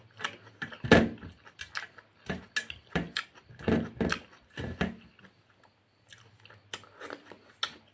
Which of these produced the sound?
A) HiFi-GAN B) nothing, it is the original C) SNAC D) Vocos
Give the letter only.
B